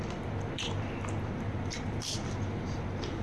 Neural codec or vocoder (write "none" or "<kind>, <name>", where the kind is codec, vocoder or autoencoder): vocoder, BigVGAN v2